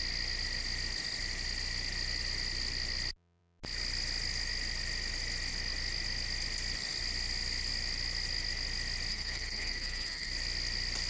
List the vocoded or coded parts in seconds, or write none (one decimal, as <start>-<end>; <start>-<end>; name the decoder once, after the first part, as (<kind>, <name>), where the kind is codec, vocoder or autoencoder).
9.1-10.3 (codec, SNAC)